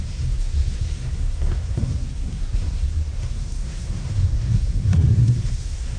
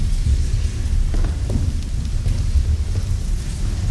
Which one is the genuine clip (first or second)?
second